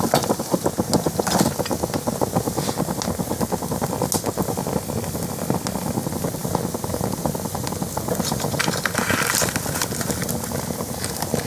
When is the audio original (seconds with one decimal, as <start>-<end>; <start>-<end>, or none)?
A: 0.0-11.5